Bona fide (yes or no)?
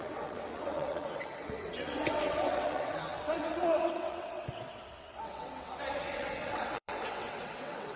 no